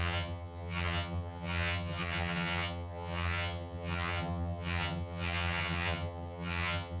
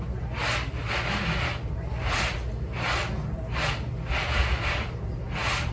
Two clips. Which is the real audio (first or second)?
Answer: second